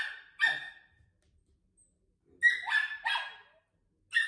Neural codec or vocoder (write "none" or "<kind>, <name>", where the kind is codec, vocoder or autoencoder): none